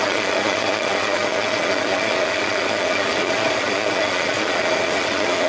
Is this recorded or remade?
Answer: remade